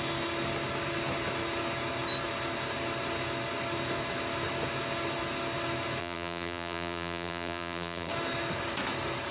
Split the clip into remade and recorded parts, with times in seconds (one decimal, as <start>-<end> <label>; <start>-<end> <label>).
0.0-6.0 recorded; 6.0-8.1 remade; 8.1-9.3 recorded